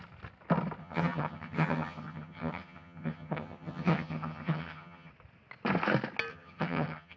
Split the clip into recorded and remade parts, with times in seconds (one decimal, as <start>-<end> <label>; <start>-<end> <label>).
0.0-0.8 recorded; 0.8-5.1 remade; 5.1-6.3 recorded; 6.3-7.2 remade